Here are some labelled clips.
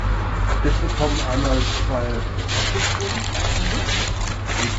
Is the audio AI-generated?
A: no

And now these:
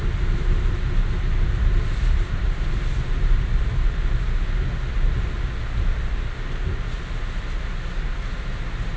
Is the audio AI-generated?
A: no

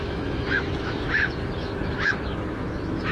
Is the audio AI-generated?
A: yes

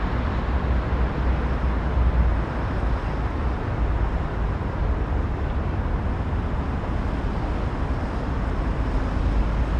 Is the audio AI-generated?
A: no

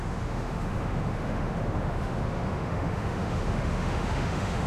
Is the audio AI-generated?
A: yes